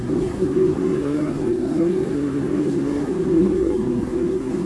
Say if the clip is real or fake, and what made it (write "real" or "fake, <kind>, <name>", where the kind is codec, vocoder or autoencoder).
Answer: fake, codec, SNAC